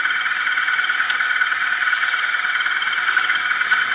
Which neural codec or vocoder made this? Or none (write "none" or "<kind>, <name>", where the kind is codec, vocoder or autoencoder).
none